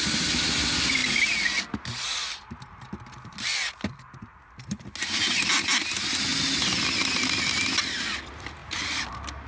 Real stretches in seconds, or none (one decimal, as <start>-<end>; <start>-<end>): 0.0-9.5